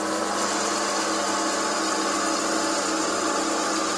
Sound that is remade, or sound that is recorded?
recorded